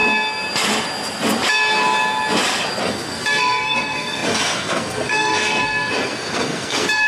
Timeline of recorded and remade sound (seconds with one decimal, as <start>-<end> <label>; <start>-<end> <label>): 0.0-2.8 recorded; 2.8-7.1 remade